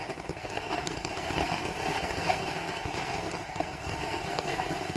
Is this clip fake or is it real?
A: fake